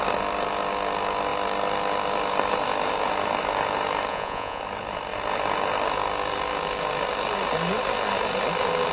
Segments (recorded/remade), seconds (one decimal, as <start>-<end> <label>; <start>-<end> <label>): 0.0-4.1 recorded; 4.1-4.6 remade; 4.6-8.9 recorded